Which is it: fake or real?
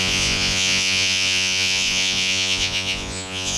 fake